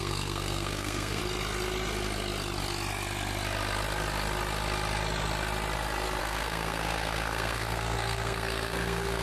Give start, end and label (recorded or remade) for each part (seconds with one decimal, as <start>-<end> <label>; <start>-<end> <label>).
0.0-1.2 remade; 1.2-6.2 recorded; 6.2-9.2 remade